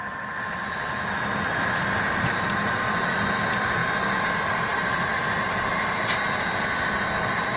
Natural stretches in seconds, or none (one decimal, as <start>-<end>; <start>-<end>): 0.0-7.6